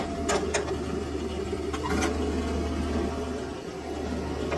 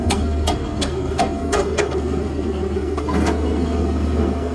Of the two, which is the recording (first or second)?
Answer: first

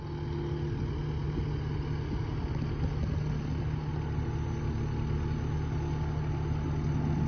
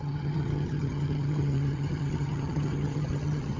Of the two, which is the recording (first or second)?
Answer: first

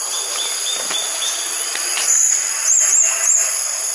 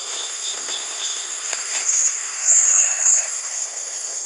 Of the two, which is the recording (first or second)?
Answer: first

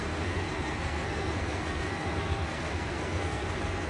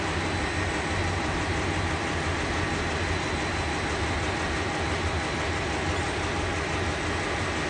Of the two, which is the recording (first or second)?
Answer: second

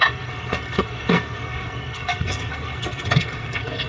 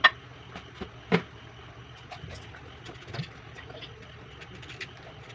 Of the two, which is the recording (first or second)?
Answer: second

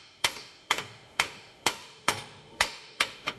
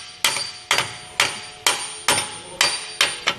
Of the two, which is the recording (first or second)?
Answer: second